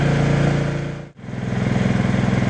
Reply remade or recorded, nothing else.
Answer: recorded